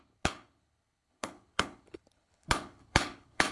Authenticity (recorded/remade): remade